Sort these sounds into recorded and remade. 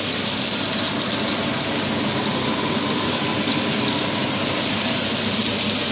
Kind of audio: recorded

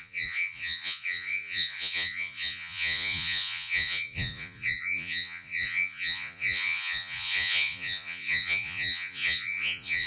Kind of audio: remade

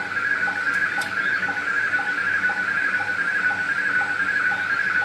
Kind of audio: recorded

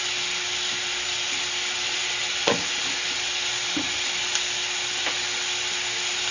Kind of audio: recorded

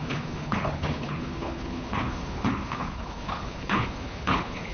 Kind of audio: remade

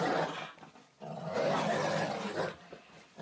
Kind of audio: recorded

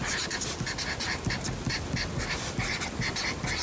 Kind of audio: recorded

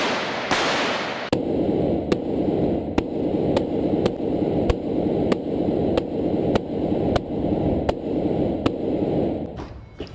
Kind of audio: recorded